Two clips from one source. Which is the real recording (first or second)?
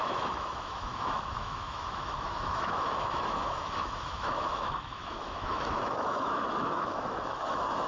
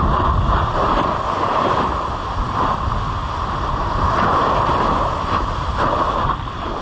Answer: second